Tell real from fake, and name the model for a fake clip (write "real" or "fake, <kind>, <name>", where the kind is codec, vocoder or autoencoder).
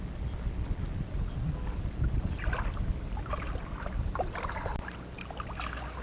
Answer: real